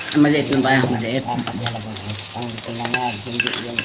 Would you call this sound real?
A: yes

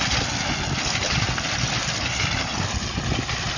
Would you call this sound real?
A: yes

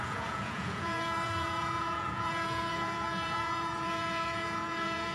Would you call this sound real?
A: no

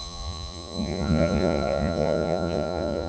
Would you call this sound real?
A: no